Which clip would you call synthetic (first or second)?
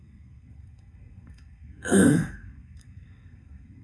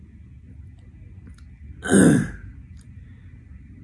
first